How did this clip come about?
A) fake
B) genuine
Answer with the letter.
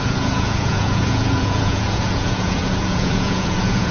A